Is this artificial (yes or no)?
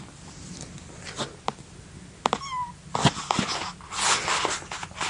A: no